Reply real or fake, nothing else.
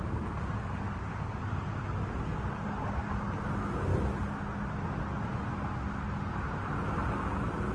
real